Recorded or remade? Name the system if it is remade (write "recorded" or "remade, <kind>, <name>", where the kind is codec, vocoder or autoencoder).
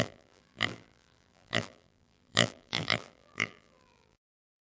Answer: remade, vocoder, BigVGAN v2